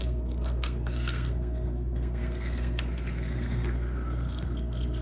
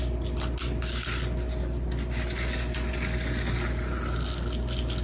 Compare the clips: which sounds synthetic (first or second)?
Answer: first